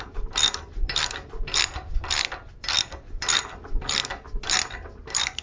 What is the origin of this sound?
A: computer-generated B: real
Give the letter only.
B